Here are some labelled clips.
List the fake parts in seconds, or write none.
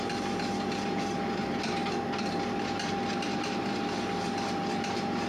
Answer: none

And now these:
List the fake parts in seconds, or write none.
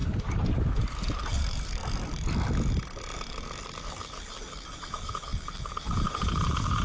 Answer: 1.1-1.8; 3.6-6.8